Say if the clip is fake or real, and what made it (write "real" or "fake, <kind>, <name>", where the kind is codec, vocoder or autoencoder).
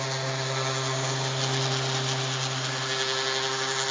real